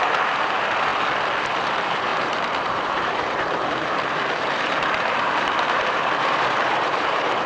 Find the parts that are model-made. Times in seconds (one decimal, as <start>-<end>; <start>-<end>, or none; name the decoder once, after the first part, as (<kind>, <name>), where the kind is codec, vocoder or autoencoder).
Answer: 0.0-0.9 (vocoder, BigVGAN v2); 1.4-7.5